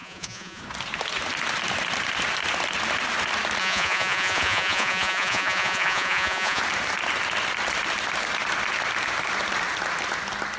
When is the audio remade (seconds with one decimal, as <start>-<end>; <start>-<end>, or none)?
0.0-0.6; 3.6-6.6